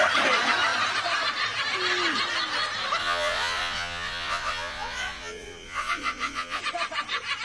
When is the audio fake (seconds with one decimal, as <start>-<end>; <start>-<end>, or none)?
3.0-6.6